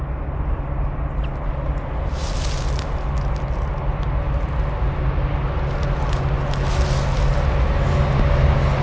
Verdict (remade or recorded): recorded